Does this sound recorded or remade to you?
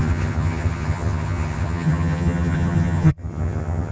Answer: remade